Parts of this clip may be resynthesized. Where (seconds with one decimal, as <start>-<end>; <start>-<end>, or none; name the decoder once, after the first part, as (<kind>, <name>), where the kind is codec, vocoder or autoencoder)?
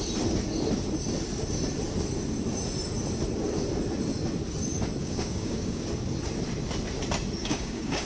5.0-5.8 (codec, DAC); 7.4-8.1